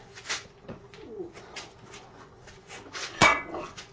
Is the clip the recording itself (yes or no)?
no